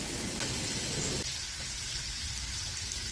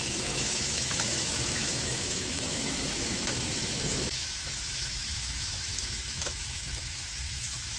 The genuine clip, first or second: first